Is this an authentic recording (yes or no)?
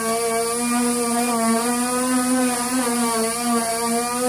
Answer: yes